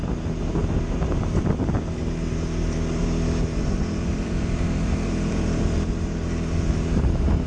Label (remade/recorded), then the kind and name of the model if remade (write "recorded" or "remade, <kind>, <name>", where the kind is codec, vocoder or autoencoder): remade, vocoder, BigVGAN v2